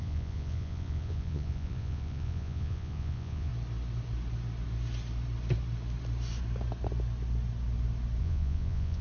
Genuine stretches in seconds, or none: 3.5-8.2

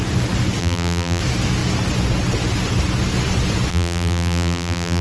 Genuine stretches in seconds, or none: 0.0-0.6; 1.2-3.7

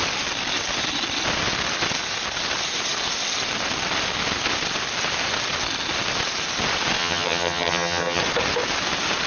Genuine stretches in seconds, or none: 0.0-7.0; 8.2-9.3

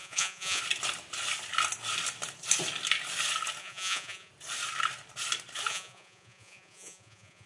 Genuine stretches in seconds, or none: 0.6-3.6; 4.3-5.7

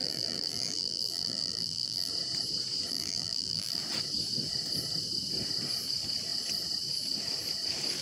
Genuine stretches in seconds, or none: 2.1-2.9; 3.8-8.0

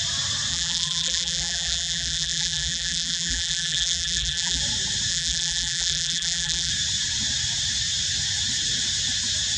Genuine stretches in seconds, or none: 0.0-0.5; 4.6-5.1; 6.7-9.6

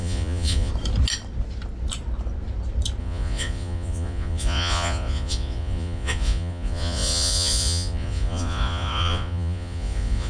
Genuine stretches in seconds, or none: 0.7-3.0

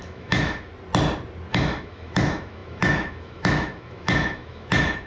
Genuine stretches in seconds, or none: 0.7-1.5